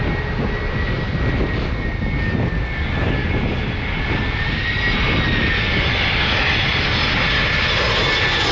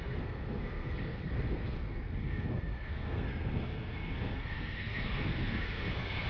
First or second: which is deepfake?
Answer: second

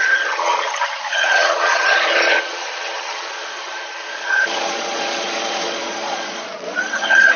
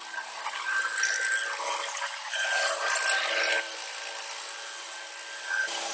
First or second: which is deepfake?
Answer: first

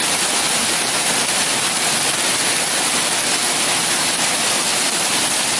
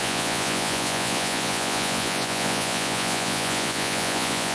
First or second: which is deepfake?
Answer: second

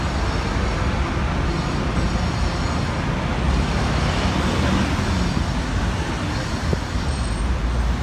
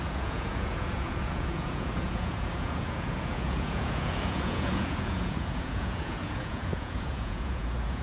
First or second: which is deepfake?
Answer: second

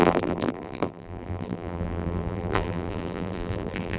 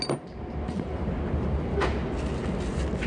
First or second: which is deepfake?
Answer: first